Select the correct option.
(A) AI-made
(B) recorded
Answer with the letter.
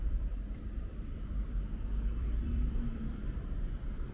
A